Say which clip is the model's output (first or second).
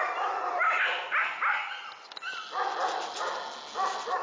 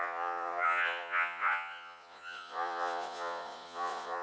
second